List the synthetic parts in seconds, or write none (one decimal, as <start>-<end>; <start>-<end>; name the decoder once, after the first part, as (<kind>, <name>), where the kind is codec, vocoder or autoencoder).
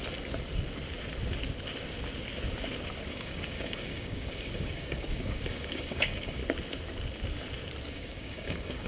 3.1-6.4 (codec, DAC); 7.9-8.9